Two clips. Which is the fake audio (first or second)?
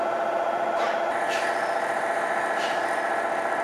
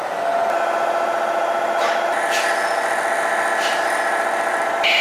first